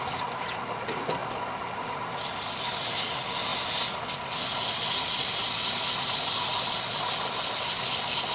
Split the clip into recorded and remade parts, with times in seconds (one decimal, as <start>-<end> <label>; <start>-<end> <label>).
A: 0.0-8.3 recorded